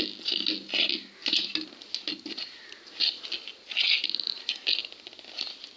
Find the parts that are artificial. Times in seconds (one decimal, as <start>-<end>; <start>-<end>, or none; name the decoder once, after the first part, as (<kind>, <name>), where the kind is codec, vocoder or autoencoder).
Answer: none